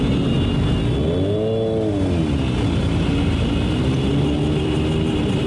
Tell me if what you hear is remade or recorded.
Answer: recorded